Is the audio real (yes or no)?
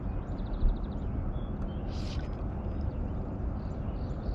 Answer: no